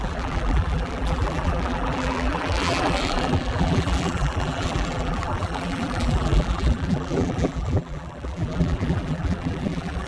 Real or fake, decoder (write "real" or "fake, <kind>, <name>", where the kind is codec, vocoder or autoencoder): fake, vocoder, BigVGAN v2